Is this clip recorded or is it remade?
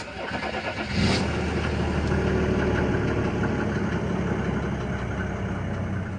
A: recorded